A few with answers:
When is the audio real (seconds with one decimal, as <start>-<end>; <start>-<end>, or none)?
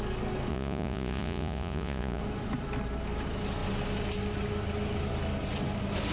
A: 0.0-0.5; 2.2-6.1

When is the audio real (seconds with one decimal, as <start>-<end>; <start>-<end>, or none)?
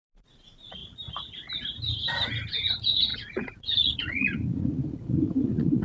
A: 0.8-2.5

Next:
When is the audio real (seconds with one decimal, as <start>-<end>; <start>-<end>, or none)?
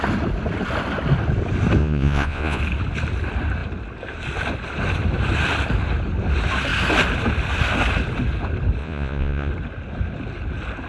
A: 0.0-1.8; 2.6-8.8; 9.5-10.9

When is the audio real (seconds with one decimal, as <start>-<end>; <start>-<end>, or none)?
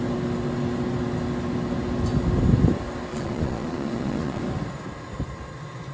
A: 0.0-3.1; 4.4-5.9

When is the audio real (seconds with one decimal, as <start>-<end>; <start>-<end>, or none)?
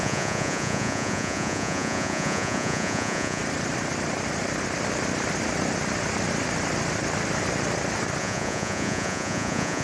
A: 3.4-8.2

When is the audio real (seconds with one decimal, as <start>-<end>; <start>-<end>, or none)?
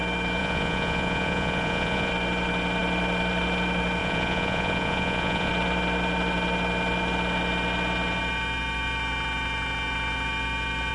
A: 0.0-0.4; 2.1-4.0; 5.5-10.9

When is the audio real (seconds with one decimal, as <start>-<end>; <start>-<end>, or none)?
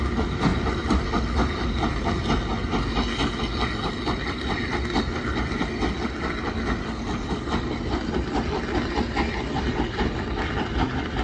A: 0.0-11.2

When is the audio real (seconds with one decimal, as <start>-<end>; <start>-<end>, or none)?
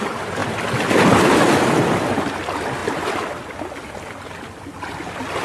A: 0.0-5.4